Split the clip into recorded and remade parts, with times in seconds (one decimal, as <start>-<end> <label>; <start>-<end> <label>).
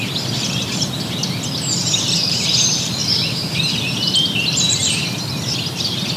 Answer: 0.0-4.8 remade; 4.8-6.2 recorded